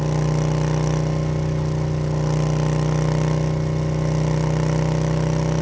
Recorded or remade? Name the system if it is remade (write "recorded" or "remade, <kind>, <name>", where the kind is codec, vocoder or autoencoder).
recorded